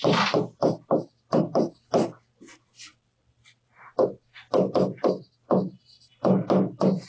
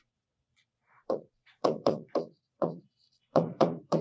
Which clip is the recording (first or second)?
first